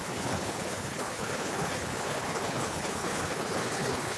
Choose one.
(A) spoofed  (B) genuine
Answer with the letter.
A